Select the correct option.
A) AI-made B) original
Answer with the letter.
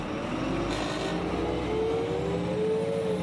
B